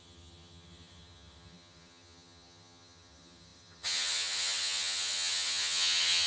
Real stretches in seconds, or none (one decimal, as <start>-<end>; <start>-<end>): none